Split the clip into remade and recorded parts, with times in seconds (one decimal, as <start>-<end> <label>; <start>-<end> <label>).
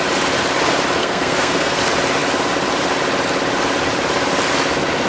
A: 0.0-1.0 recorded; 1.0-1.8 remade; 1.8-5.1 recorded